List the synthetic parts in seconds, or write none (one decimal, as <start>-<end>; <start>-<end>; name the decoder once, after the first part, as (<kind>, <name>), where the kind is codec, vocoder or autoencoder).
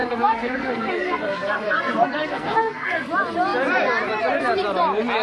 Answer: 0.0-3.1 (codec, SNAC)